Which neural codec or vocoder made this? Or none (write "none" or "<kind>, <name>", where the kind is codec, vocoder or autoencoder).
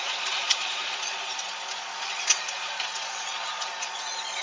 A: vocoder, Vocos